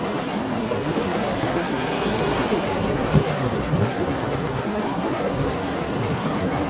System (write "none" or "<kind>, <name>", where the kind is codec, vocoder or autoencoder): codec, SNAC